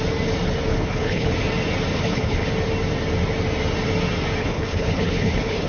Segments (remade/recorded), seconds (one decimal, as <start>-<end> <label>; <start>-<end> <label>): 0.0-0.7 recorded; 0.7-1.3 remade; 1.3-1.9 recorded; 1.9-2.5 remade; 2.5-4.4 recorded; 4.4-5.7 remade